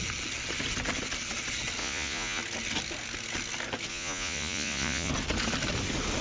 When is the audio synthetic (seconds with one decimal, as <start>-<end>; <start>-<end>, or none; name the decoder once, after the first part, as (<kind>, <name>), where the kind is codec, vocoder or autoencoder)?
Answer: 1.8-2.4 (vocoder, Vocos); 3.9-5.1